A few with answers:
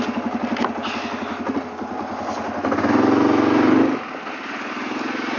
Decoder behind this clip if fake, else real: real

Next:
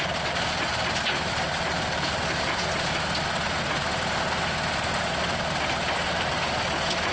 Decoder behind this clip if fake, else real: real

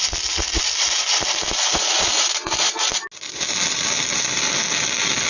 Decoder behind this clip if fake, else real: real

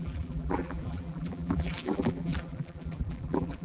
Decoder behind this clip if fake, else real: fake, vocoder, BigVGAN v2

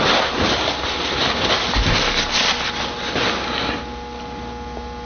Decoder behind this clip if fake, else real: real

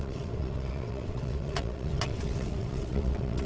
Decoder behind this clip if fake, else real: fake, vocoder, WaveNeXt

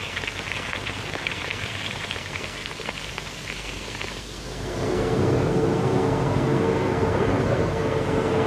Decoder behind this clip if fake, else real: fake, codec, SNAC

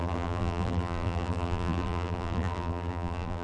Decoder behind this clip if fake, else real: fake, vocoder, BigVGAN v2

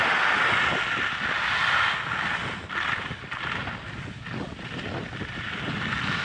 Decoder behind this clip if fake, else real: real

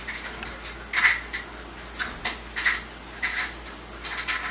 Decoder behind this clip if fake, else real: real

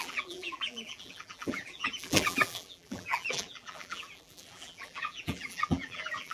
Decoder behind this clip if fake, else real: fake, vocoder, BigVGAN v2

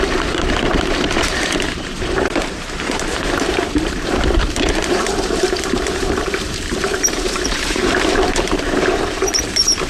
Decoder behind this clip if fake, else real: fake, vocoder, BigVGAN v2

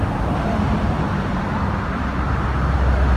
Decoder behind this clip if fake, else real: real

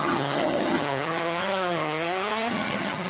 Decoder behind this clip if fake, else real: fake, vocoder, HiFi-GAN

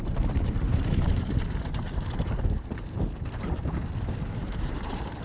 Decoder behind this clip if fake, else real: fake, vocoder, BigVGAN v2